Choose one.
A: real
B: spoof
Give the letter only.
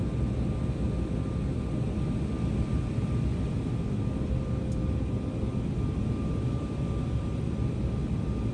A